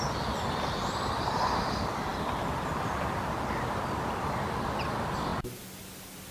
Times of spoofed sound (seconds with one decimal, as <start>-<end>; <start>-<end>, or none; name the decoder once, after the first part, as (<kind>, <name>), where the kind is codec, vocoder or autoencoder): none